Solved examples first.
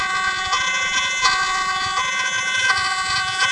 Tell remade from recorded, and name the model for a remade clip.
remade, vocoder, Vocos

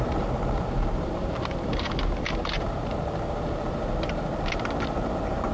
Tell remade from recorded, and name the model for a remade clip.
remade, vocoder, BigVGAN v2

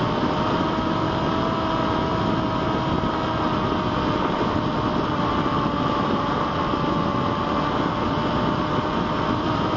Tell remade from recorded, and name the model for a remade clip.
recorded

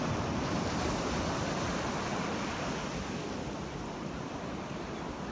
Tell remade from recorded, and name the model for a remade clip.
recorded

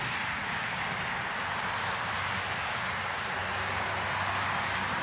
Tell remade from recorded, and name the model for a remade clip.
recorded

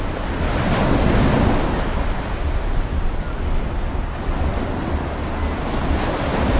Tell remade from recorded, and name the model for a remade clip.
recorded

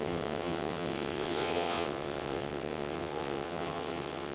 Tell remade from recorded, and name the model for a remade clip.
remade, vocoder, WaveNeXt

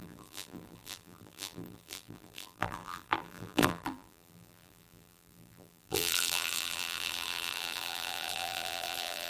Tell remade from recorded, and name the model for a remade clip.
remade, vocoder, BigVGAN v2